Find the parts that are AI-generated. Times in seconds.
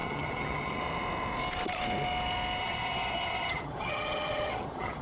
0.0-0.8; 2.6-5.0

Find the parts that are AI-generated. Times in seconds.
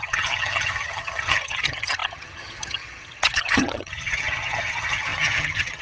0.0-5.8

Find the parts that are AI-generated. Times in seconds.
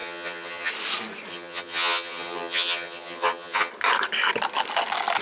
0.0-0.7; 1.3-3.7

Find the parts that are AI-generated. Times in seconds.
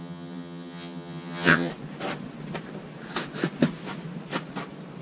0.0-1.7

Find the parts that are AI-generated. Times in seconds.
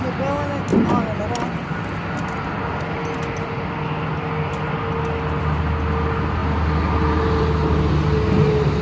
none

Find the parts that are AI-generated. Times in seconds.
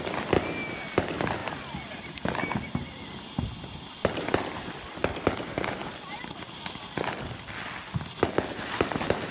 none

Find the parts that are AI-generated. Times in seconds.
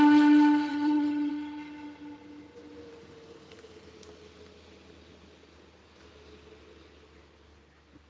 0.7-1.3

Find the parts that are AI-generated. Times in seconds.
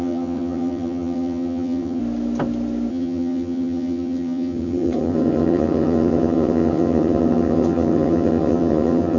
0.0-2.0; 2.9-9.2